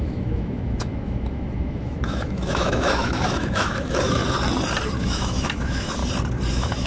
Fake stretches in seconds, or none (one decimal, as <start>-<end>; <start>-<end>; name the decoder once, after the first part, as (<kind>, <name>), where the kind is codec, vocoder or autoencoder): 0.0-4.2 (autoencoder, DAC-VAE); 5.0-6.0; 6.5-6.9